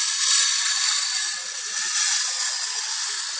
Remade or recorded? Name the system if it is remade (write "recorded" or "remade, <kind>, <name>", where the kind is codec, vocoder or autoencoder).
recorded